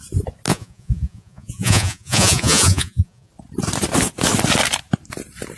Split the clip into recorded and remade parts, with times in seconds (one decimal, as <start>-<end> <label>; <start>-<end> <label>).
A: 0.0-0.5 recorded; 0.5-3.3 remade; 3.3-5.6 recorded